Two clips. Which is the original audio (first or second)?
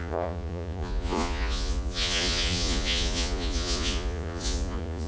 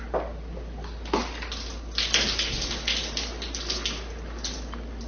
second